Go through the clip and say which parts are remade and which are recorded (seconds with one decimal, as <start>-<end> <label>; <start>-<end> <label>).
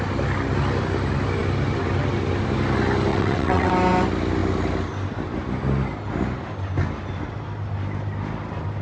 0.0-3.1 recorded; 3.1-3.7 remade; 3.7-8.8 recorded